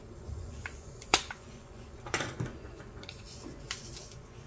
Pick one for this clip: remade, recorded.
remade